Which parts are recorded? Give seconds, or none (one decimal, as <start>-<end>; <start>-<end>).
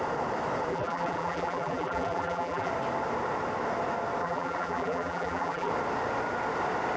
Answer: 0.0-0.7; 2.7-4.2; 5.7-7.0